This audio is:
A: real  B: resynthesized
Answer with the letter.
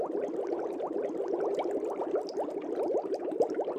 A